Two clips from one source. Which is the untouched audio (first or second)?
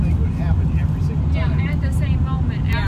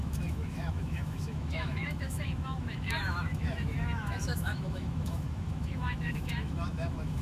first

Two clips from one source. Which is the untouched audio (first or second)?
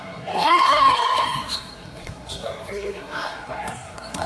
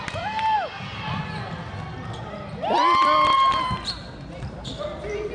second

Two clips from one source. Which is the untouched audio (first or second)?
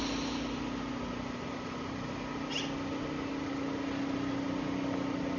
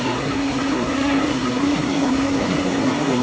first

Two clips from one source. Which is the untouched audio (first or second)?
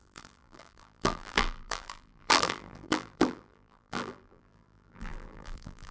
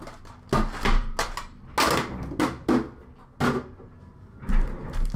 second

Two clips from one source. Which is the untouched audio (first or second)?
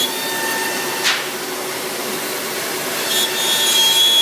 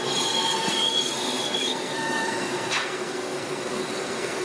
first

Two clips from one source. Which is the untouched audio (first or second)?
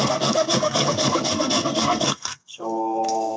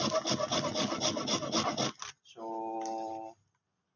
second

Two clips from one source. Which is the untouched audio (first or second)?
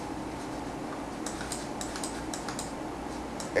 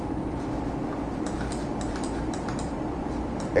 first